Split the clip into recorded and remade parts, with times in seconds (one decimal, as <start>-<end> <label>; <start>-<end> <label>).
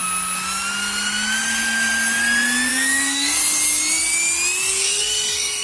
0.0-2.7 recorded; 2.7-3.4 remade; 3.4-4.7 recorded; 4.7-5.6 remade